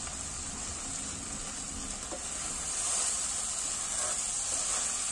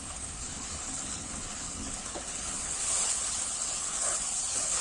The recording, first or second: first